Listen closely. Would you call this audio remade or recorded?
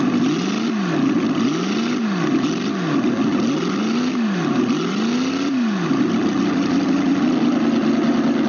recorded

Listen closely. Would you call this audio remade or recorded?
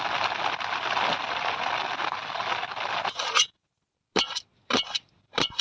recorded